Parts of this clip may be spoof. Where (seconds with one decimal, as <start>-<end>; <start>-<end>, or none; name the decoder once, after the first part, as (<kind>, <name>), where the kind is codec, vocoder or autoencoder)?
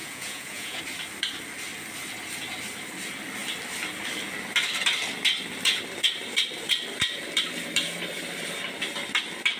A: 0.0-0.8 (vocoder, Vocos)